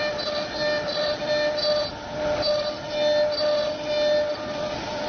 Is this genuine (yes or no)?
yes